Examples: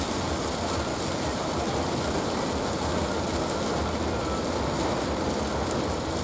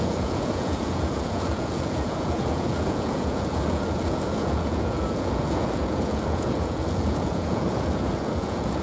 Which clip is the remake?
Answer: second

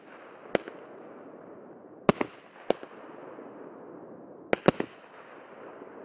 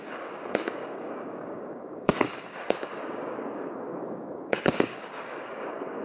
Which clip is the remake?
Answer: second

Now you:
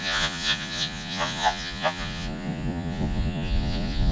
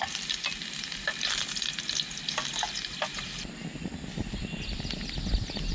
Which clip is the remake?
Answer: first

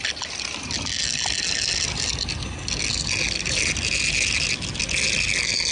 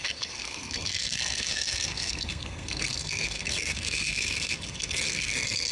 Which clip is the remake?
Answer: second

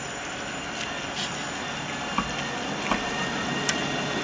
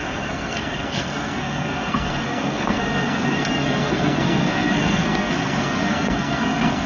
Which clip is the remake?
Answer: second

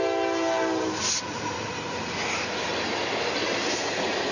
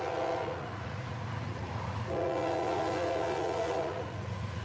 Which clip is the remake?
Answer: second